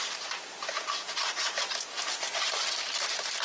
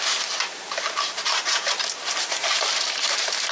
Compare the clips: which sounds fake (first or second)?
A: second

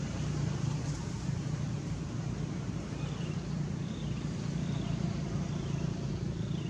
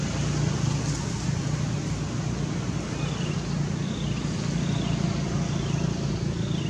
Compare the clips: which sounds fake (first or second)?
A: first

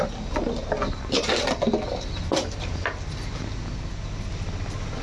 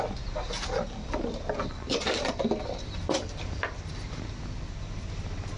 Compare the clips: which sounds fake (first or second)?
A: second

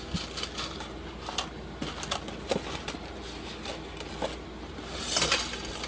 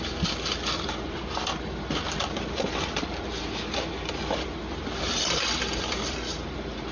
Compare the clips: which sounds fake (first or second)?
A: second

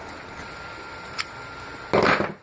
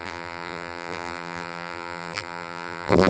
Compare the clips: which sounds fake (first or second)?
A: second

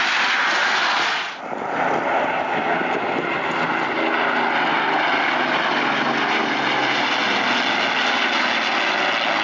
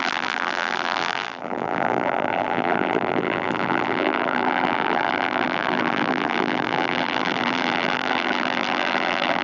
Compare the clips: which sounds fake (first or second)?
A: second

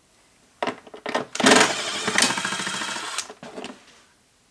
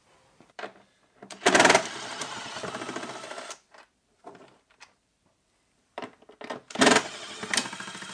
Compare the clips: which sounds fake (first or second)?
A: second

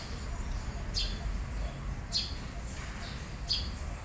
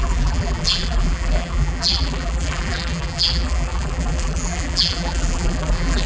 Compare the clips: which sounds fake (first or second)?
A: second